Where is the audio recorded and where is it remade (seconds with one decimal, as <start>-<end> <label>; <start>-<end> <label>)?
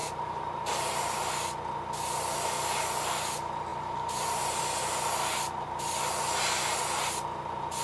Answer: 0.0-1.3 remade; 1.3-3.7 recorded; 3.7-4.8 remade; 4.8-7.8 recorded